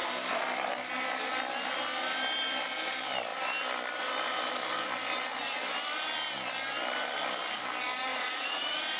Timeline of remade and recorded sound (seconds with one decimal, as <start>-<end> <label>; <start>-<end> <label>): 0.0-8.1 recorded; 8.1-9.0 remade